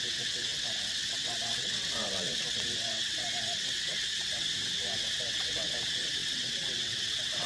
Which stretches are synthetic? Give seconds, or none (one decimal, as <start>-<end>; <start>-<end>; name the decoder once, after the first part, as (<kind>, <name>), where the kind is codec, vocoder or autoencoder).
0.0-7.5 (vocoder, WaveNeXt)